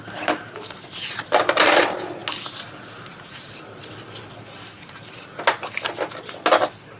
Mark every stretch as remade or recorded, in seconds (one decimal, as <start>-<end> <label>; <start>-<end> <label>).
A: 0.0-7.0 recorded